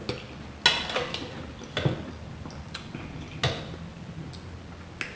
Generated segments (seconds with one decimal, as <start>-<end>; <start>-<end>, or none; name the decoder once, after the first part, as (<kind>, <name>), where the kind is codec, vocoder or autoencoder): none